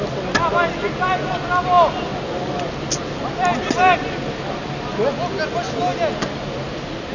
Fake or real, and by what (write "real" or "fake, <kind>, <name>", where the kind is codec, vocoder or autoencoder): real